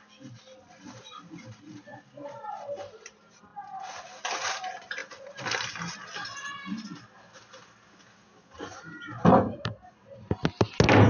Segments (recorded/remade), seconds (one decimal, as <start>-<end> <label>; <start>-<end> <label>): 0.0-11.1 recorded